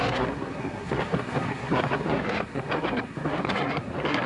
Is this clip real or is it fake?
fake